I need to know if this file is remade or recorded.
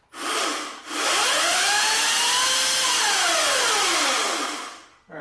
recorded